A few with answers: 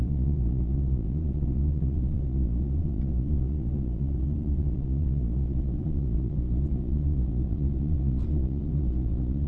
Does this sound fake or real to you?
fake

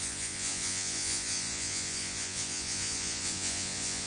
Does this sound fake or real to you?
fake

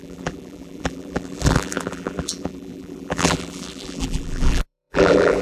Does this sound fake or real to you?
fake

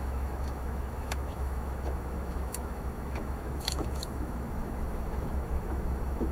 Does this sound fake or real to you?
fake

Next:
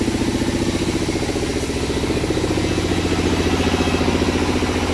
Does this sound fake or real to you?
real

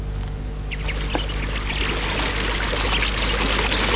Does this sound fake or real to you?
real